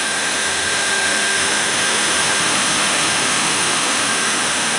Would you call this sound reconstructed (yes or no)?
yes